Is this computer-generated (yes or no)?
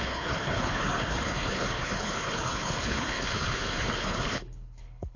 yes